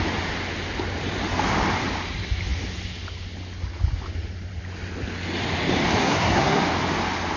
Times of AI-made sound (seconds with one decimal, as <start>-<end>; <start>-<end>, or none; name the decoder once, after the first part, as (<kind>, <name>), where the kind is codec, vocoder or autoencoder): 6.0-6.6 (codec, SNAC)